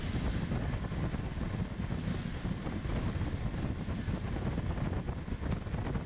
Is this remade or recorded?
recorded